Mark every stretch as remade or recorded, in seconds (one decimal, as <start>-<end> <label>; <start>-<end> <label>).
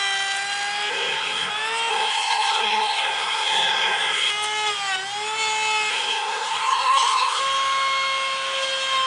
0.0-0.9 recorded; 0.9-1.5 remade; 1.5-1.9 recorded; 1.9-4.3 remade; 4.3-5.9 recorded; 5.9-7.4 remade; 7.4-9.1 recorded